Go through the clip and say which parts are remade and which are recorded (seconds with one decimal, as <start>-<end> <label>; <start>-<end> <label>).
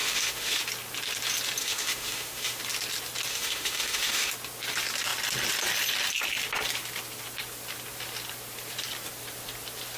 0.0-0.6 remade; 0.6-1.6 recorded; 1.6-2.6 remade; 2.6-3.3 recorded; 3.3-4.3 remade; 4.3-10.0 recorded